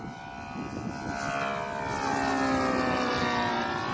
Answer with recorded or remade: recorded